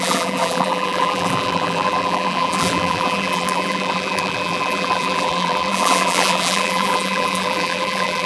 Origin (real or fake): fake